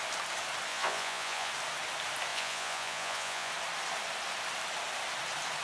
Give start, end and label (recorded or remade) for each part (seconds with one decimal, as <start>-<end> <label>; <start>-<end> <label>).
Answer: 0.0-0.7 recorded; 0.7-1.5 remade; 1.5-2.3 recorded; 2.3-3.5 remade; 3.5-5.6 recorded